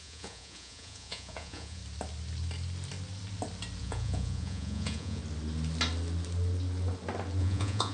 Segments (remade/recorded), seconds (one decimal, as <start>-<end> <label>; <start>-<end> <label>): 0.0-1.8 remade; 1.8-3.8 recorded; 3.8-5.2 remade; 5.2-7.4 recorded; 7.4-7.9 remade